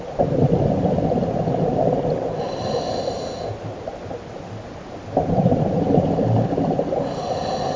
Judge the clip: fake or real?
real